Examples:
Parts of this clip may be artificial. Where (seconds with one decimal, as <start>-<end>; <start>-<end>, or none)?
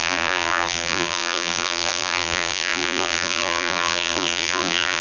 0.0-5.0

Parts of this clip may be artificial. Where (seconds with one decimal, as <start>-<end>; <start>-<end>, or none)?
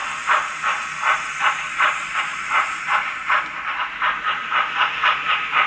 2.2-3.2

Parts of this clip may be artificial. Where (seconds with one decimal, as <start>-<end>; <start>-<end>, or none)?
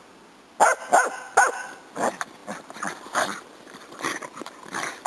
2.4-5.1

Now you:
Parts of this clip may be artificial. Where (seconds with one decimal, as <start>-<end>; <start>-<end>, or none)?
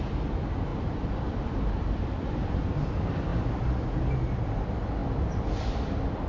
0.7-2.9; 3.3-4.5; 5.0-6.3